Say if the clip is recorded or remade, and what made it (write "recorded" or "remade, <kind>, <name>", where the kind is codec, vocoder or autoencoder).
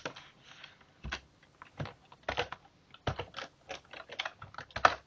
recorded